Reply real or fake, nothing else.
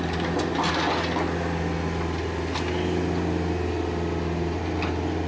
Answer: real